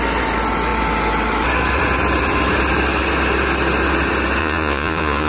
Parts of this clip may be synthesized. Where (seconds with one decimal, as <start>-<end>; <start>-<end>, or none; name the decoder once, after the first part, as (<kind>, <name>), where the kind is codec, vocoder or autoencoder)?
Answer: 4.4-5.3 (vocoder, Vocos)